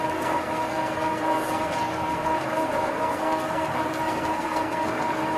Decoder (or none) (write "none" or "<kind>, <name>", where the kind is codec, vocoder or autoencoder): codec, SNAC